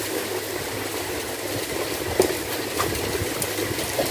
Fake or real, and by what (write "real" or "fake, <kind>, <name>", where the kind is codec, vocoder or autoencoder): real